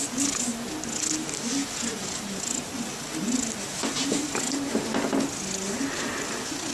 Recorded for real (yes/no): yes